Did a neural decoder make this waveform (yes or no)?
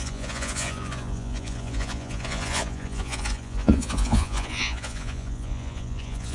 yes